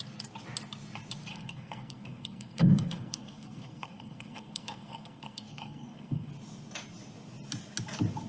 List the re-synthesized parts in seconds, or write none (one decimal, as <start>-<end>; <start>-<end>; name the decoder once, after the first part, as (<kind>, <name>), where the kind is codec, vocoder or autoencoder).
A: 1.3-6.3 (codec, SNAC)